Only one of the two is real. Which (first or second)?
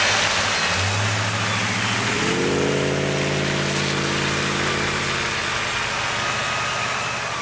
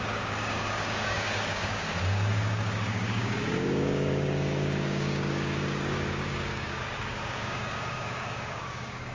first